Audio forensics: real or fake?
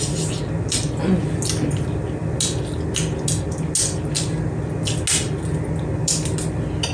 real